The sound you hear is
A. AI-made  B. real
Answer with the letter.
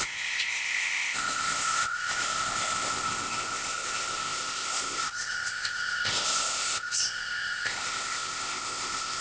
A